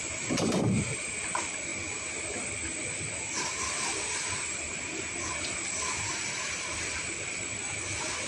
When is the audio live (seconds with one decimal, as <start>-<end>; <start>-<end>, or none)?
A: 0.0-8.3